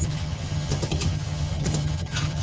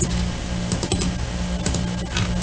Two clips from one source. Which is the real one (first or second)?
second